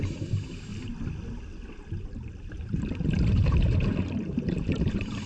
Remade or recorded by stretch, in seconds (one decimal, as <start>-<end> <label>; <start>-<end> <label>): 0.0-0.7 remade; 0.7-3.3 recorded; 3.3-5.3 remade